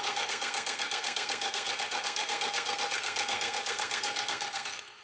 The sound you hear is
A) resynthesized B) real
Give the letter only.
A